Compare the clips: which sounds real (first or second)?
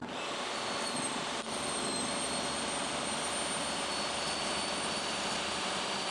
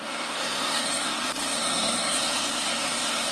first